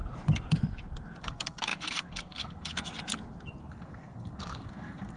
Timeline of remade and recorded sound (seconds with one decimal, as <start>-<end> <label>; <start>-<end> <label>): 0.0-1.2 recorded; 1.2-2.9 remade; 2.9-3.6 recorded; 3.6-5.2 remade